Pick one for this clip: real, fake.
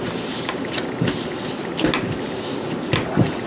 real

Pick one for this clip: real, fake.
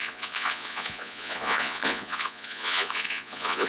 fake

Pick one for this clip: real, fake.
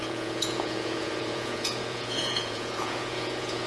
fake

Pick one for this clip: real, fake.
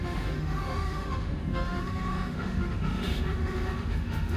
fake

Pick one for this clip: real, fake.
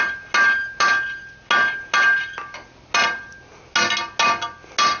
real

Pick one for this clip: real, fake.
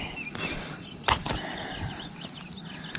real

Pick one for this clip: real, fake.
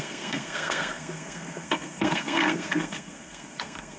fake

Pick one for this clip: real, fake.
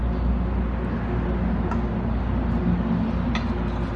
real